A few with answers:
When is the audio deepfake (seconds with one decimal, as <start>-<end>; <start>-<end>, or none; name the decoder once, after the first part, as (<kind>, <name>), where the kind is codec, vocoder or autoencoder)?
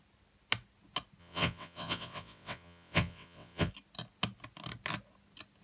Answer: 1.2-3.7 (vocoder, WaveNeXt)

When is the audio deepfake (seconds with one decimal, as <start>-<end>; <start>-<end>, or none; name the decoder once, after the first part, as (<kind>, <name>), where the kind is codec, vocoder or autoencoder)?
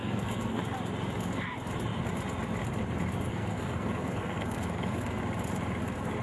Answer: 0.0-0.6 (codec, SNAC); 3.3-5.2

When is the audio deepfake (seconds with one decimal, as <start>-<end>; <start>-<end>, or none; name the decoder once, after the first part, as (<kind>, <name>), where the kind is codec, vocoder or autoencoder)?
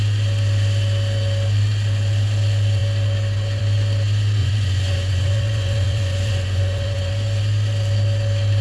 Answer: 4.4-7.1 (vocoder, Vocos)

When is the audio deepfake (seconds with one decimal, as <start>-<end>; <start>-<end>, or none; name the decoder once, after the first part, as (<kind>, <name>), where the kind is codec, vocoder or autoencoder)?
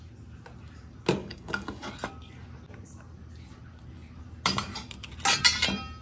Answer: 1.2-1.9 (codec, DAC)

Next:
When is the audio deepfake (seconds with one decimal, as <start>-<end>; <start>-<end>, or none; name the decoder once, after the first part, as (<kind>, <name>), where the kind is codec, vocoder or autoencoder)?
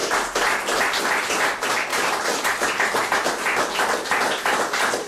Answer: none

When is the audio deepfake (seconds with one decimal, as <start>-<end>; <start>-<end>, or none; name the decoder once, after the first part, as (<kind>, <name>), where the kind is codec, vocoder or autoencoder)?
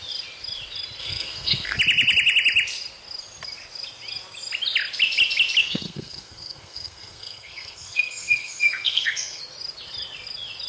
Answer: 1.0-1.8 (codec, SNAC); 5.6-9.4